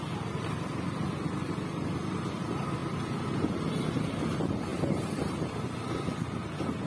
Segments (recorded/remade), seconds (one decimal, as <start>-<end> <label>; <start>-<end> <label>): 0.0-6.9 recorded